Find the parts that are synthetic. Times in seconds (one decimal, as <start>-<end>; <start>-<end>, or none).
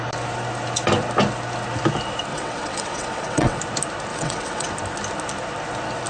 2.3-3.6; 4.1-4.7